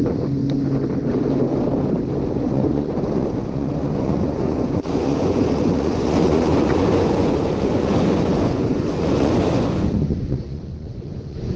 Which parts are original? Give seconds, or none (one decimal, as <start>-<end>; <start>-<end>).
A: 0.4-2.3